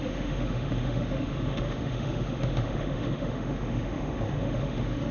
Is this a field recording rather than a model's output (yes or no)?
no